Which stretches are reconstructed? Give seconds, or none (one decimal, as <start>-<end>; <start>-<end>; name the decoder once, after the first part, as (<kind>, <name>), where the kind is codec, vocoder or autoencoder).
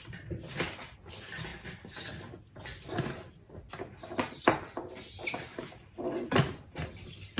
none